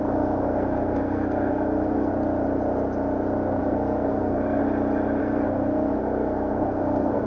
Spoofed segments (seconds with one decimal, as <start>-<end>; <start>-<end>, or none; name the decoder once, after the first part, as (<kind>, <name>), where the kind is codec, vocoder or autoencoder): 0.0-2.1 (codec, SNAC); 3.6-4.6; 5.2-7.3

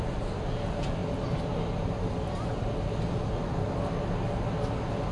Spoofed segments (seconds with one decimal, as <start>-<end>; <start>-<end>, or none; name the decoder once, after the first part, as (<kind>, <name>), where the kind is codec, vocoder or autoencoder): none

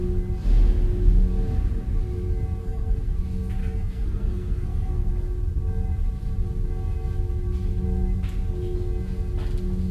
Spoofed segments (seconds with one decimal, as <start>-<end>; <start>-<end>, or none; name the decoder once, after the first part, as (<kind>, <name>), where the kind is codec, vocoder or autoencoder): 2.6-3.2 (codec, SNAC); 3.6-5.1

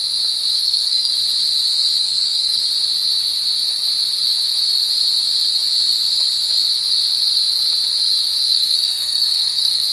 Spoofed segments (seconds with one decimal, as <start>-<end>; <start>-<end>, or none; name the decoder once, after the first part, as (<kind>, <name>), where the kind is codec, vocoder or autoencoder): 0.6-1.1 (codec, SNAC); 2.0-2.6; 8.5-9.9